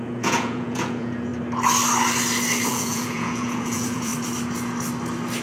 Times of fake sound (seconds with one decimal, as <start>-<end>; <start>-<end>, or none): 0.0-1.3; 2.7-4.1